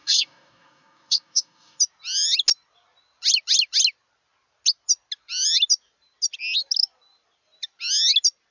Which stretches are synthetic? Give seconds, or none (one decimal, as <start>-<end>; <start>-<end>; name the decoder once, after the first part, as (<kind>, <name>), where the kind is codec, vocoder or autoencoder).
0.0-1.8 (codec, DAC)